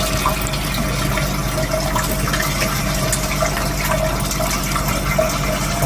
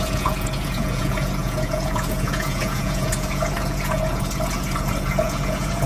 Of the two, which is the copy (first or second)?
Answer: second